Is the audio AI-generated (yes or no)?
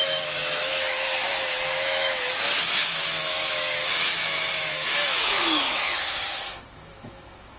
yes